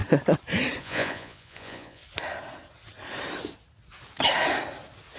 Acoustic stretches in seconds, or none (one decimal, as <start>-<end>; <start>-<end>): 0.0-0.8; 2.0-5.2